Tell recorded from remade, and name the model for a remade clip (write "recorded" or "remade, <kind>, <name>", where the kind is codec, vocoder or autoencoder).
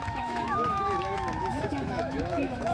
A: remade, autoencoder, DAC-VAE